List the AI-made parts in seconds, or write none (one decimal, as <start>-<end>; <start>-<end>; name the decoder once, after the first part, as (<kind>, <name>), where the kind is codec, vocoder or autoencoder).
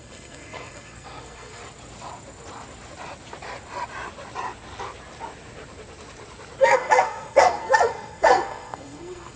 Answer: 0.0-1.6 (codec, SNAC); 6.6-9.4